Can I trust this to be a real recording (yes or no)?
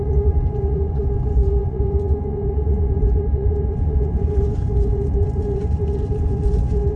no